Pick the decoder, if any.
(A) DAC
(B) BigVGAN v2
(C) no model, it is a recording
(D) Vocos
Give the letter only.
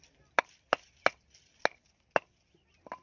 C